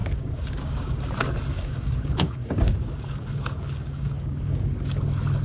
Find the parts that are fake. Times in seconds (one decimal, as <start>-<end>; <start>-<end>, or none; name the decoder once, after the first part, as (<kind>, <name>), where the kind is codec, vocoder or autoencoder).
0.0-1.0 (codec, DAC); 1.5-4.7